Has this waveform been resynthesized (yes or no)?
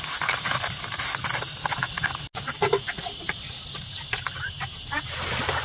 no